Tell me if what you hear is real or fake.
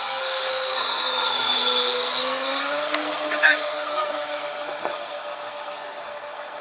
fake